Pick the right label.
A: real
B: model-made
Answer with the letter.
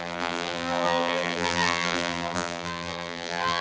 B